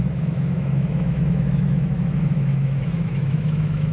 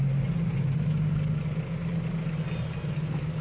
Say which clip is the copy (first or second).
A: first